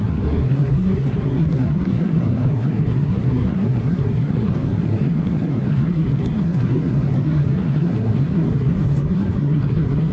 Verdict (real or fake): fake